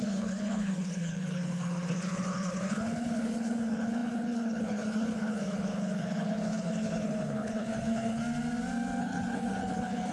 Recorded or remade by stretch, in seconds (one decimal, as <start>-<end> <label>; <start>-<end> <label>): 0.0-8.2 remade; 8.2-9.0 recorded; 9.0-10.1 remade